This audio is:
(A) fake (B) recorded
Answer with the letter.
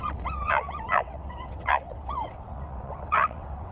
A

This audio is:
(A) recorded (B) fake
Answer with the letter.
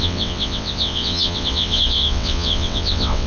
B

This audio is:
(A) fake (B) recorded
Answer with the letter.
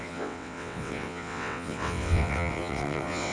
A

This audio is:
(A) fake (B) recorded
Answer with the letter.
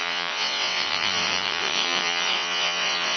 A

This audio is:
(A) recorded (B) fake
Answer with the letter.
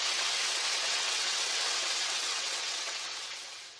B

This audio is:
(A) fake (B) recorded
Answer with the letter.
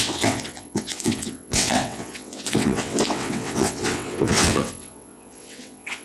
A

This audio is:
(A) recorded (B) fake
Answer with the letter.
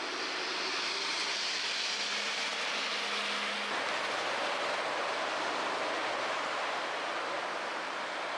A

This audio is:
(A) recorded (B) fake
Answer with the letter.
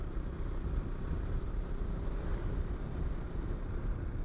A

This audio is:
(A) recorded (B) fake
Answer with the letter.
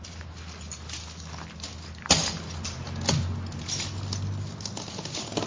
A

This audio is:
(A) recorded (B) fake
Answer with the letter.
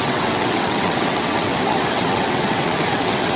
B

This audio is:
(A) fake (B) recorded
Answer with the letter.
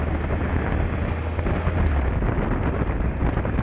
B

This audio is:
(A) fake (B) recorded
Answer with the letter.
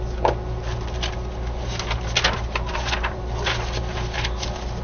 B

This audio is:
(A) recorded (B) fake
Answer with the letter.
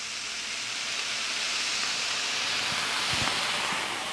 A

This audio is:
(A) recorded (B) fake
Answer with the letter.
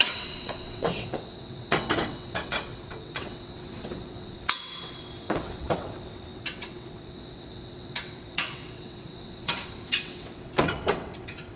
B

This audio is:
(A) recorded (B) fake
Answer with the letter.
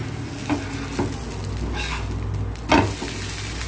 A